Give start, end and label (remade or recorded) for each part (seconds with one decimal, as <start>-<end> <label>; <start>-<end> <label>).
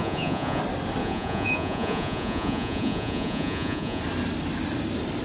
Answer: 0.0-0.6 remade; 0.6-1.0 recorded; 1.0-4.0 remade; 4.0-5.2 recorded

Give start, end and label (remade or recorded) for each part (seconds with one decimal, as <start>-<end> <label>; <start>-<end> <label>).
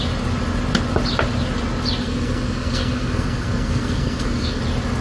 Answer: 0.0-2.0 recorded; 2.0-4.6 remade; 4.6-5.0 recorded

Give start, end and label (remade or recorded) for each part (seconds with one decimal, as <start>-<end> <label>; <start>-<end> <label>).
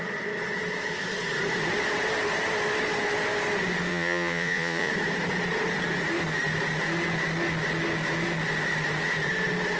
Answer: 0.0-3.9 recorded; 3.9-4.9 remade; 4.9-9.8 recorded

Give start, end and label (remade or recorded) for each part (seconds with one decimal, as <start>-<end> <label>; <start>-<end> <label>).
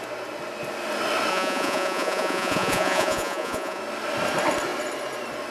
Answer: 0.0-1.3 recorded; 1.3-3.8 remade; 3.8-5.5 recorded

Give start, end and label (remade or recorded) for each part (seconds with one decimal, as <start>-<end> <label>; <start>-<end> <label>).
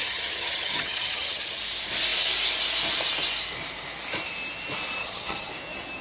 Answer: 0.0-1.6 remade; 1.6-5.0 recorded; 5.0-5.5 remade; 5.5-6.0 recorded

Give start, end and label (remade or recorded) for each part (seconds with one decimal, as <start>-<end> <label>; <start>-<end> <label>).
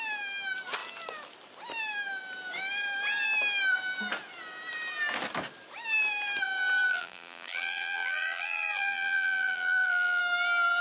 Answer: 0.0-6.9 recorded; 6.9-10.2 remade; 10.2-10.8 recorded